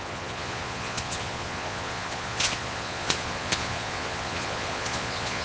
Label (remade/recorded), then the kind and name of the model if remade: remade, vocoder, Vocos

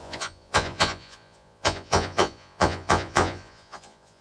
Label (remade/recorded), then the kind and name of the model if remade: remade, vocoder, Vocos